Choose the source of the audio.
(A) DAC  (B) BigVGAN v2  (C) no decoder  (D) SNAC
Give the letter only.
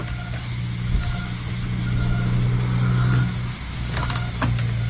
C